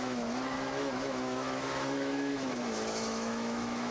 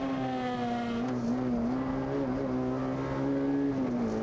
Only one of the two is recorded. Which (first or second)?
second